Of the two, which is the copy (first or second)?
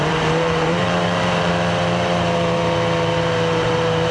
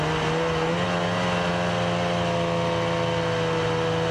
first